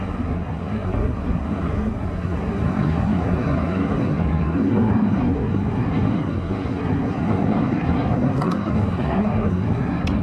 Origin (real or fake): fake